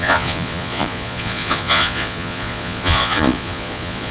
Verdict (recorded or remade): remade